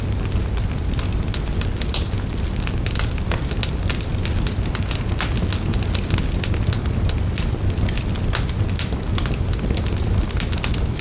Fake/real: real